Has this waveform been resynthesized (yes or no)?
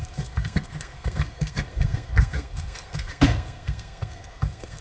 yes